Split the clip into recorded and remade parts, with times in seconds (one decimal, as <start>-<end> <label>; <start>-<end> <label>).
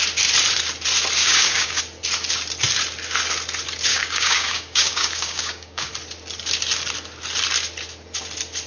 0.0-1.2 recorded; 1.2-1.8 remade; 1.8-3.9 recorded; 3.9-5.9 remade; 5.9-8.7 recorded